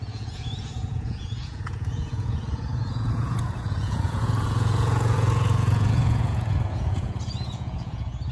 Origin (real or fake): fake